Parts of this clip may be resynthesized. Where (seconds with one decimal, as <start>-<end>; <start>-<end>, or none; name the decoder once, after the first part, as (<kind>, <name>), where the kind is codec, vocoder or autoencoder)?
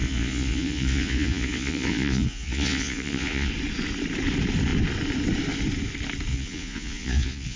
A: 0.0-3.5 (vocoder, Vocos); 6.3-7.6